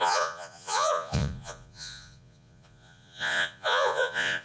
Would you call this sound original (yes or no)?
no